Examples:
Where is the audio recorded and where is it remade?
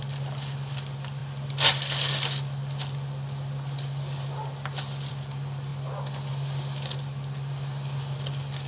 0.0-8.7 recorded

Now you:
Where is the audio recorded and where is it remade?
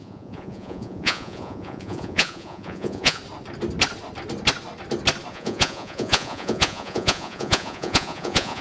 0.0-3.2 remade; 3.2-5.3 recorded; 5.3-8.6 remade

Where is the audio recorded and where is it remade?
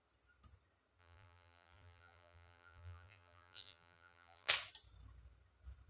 0.0-1.0 recorded; 1.0-4.5 remade; 4.5-5.9 recorded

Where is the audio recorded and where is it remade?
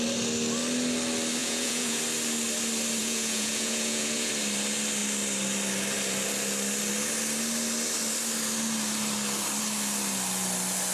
0.0-1.4 recorded; 1.4-2.0 remade; 2.0-3.0 recorded; 3.0-4.3 remade; 4.3-10.9 recorded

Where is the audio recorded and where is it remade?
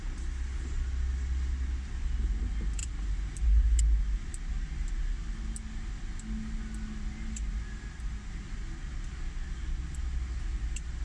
0.0-2.8 recorded; 2.8-3.8 remade; 3.8-11.0 recorded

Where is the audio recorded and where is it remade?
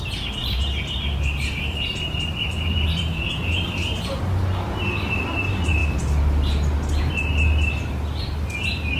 0.0-0.4 recorded; 0.4-4.2 remade; 4.2-9.0 recorded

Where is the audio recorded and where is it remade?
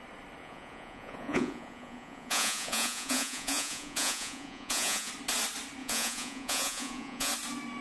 0.0-0.4 recorded; 0.4-5.1 remade; 5.1-5.8 recorded; 5.8-7.3 remade; 7.3-7.8 recorded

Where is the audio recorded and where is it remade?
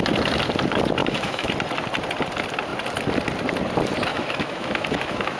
0.0-1.0 recorded; 1.0-1.5 remade; 1.5-4.1 recorded; 4.1-5.4 remade